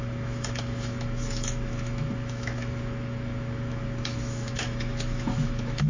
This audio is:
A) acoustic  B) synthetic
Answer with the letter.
B